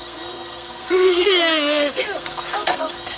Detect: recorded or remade remade